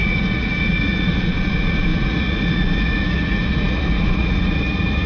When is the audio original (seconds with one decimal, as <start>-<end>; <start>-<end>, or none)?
none